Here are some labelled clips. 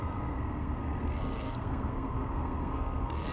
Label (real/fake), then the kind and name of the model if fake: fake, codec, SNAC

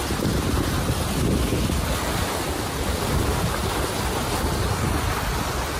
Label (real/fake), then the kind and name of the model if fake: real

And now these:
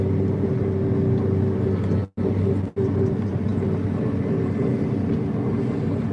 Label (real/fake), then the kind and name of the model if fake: real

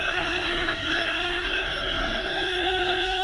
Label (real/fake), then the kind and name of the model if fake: fake, codec, SNAC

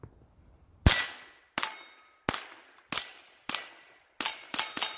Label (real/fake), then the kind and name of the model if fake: real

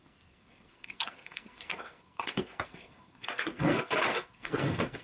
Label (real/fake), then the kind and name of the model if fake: fake, codec, SNAC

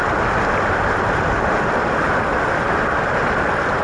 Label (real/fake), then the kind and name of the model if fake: real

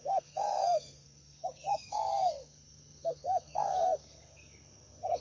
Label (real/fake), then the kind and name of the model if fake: fake, codec, SNAC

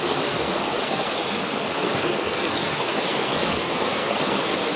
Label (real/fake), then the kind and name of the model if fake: fake, codec, SNAC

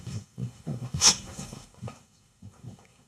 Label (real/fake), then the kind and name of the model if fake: fake, codec, SNAC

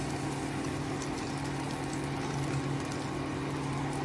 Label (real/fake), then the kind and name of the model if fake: real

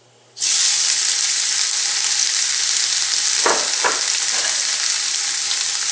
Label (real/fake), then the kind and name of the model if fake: real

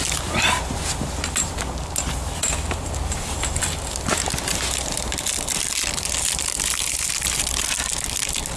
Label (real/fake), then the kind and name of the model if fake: real